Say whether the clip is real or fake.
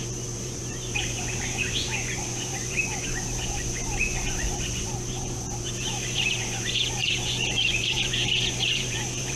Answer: fake